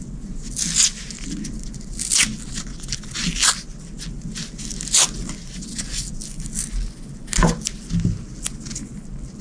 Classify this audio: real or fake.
real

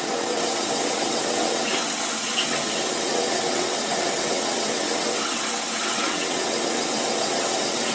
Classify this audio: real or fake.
fake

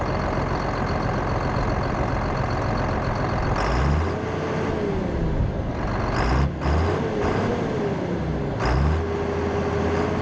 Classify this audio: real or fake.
real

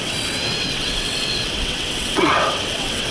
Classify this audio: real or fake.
fake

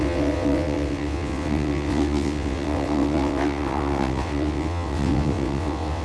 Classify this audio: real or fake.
fake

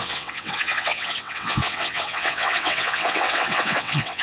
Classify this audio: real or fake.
fake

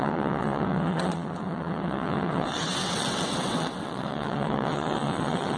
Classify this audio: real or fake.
fake